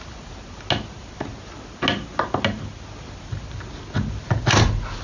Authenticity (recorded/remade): recorded